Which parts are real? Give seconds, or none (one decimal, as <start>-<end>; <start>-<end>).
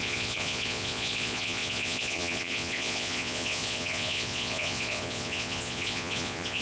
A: none